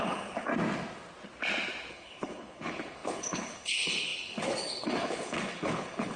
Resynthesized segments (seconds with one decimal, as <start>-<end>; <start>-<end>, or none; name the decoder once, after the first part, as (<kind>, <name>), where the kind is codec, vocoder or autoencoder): 0.0-0.5 (codec, HILCodec); 1.9-6.2